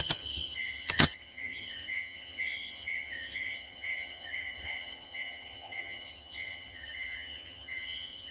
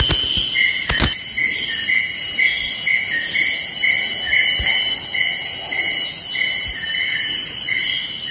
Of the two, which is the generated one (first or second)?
first